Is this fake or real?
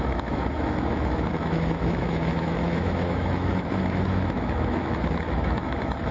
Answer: fake